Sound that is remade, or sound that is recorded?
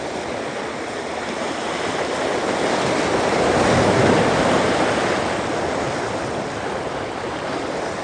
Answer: recorded